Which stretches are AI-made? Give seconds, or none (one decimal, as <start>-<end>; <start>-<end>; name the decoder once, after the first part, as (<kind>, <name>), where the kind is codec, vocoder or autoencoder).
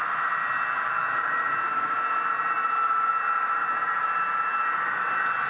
1.0-4.2 (vocoder, BigVGAN v2)